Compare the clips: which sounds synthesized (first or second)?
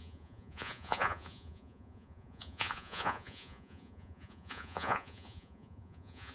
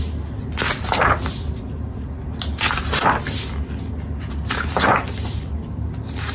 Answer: first